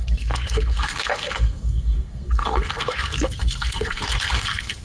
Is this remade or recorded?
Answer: remade